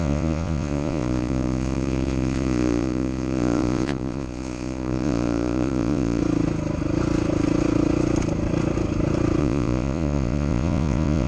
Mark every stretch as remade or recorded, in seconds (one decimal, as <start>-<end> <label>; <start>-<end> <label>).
0.0-6.2 remade; 6.2-9.4 recorded; 9.4-11.3 remade